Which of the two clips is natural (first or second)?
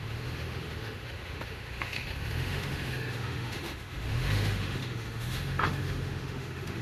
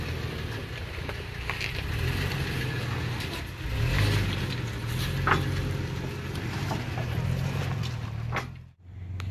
second